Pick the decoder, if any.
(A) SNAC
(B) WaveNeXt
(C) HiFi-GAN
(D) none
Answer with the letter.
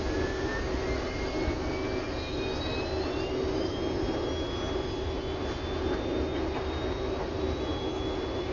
D